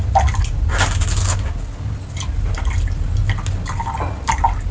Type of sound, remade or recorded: recorded